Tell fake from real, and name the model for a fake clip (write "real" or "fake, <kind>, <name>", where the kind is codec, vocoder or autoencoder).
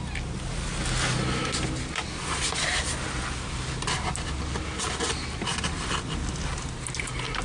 real